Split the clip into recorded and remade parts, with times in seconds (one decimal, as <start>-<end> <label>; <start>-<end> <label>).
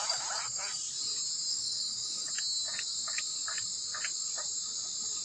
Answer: 0.0-1.5 recorded; 1.5-2.3 remade; 2.3-5.2 recorded